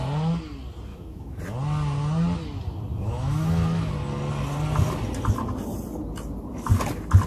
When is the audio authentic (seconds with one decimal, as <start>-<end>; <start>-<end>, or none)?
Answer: 0.0-0.9; 1.4-2.9; 3.9-7.3